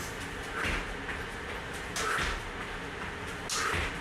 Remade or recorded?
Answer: recorded